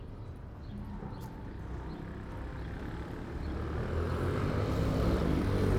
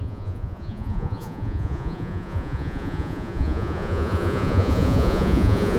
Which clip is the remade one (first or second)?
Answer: second